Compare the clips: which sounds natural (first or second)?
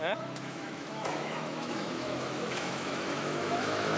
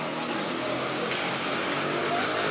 second